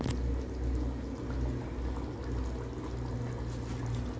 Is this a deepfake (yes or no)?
no